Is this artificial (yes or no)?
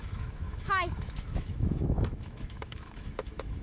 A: yes